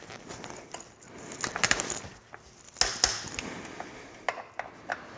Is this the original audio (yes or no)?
yes